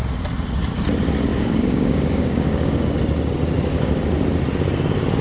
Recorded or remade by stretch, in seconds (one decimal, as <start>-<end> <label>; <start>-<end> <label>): 0.0-1.3 recorded; 1.3-2.8 remade; 2.8-5.2 recorded